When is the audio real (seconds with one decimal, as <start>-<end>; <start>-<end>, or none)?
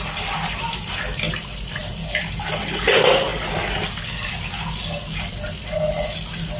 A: 0.0-1.8; 2.6-6.6